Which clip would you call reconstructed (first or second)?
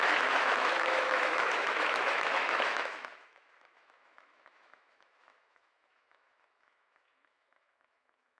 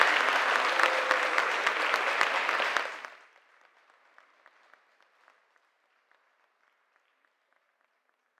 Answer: first